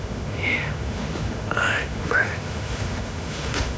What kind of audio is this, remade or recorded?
remade